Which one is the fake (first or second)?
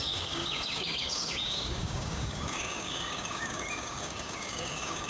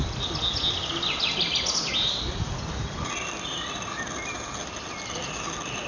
first